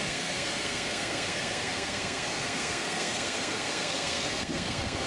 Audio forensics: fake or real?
fake